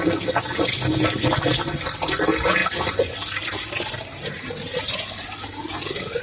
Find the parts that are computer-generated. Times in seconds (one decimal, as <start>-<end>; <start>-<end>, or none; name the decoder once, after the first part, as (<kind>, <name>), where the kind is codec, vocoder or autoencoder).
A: none

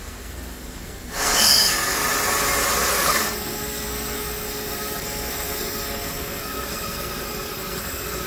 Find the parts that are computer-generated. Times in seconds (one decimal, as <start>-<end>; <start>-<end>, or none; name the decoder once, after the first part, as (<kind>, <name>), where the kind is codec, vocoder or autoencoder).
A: 0.0-2.0 (codec, SNAC); 2.9-8.3

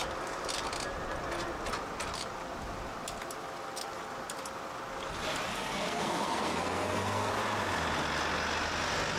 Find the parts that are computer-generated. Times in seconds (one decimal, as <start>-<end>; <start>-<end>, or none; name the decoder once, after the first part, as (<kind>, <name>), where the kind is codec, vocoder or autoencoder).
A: 5.5-7.3 (codec, SNAC)

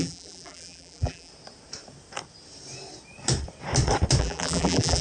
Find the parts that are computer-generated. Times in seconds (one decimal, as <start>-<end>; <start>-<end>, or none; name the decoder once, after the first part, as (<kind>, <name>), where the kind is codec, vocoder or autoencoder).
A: 0.0-1.3 (vocoder, BigVGAN v2); 4.2-5.0

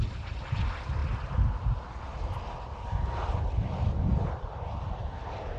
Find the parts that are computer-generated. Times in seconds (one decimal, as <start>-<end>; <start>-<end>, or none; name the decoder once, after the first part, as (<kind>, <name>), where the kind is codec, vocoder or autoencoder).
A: none

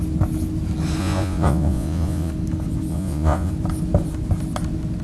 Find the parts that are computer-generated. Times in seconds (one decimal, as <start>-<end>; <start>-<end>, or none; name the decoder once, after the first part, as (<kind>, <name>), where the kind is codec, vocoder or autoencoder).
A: 1.0-2.3 (vocoder, Vocos); 2.9-3.5

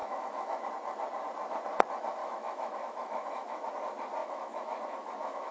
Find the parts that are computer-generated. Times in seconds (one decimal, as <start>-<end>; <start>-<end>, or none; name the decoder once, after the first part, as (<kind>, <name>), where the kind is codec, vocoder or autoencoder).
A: 0.0-0.7 (autoencoder, DAC-VAE); 2.2-3.7; 4.2-5.5

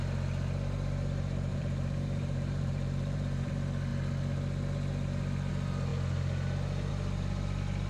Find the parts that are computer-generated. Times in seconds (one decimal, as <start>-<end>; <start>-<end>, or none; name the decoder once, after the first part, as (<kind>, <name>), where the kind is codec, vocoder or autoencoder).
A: 1.5-3.5 (vocoder, BigVGAN v2)